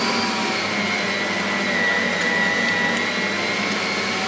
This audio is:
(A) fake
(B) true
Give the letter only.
B